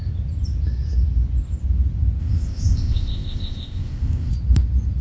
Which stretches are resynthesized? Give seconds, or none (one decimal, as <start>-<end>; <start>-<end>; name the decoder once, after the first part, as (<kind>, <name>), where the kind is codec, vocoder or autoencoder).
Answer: 2.2-4.3 (codec, ZipCodec)